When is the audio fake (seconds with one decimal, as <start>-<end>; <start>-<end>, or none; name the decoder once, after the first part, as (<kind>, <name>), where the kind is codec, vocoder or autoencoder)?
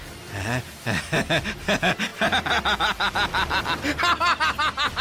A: none